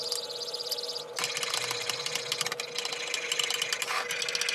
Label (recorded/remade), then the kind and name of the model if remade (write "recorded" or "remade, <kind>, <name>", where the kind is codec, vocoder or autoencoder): recorded